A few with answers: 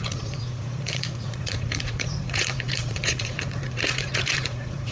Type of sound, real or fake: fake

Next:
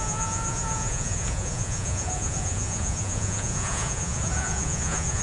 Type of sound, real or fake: fake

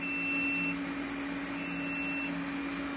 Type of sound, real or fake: real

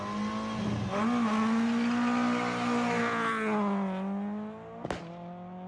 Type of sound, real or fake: real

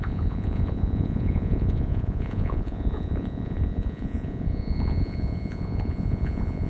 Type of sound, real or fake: fake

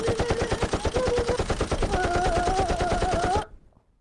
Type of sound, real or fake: real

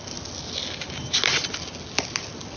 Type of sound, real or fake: real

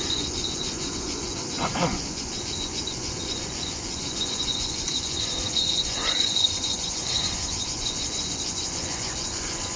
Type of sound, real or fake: fake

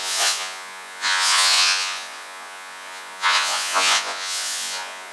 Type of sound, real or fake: fake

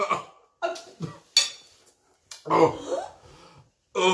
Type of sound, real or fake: real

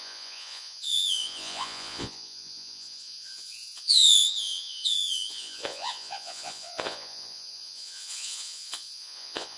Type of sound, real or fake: fake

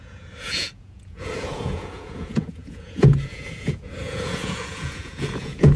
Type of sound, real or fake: fake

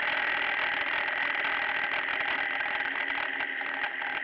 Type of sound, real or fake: real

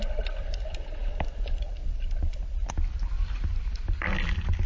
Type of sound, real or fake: real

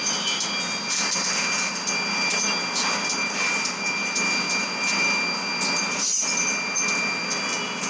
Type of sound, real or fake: real